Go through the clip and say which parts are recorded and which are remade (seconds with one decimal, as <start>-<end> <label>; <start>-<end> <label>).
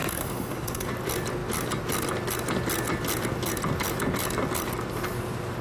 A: 0.0-0.9 remade; 0.9-5.6 recorded